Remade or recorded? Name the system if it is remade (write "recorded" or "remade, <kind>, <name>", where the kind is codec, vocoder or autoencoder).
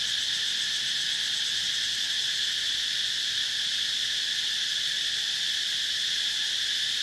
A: recorded